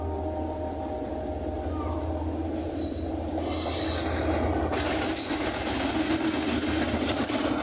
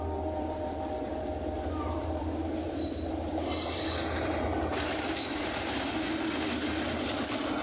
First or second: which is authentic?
first